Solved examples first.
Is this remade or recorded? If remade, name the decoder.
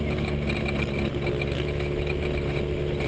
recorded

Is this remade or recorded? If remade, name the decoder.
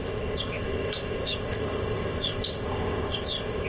remade, codec, ZipCodec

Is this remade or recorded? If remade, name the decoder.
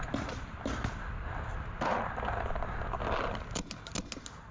recorded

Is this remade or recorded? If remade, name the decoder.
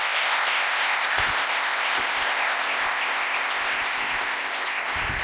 remade, codec, ZipCodec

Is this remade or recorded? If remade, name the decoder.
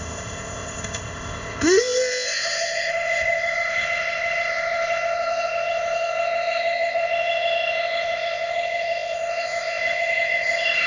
remade, codec, ZipCodec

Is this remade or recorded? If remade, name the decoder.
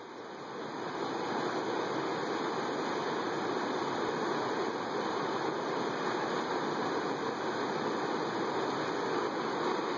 recorded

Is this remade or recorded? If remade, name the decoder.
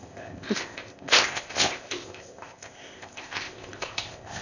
remade, codec, ZipCodec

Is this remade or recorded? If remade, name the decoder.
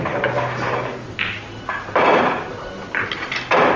recorded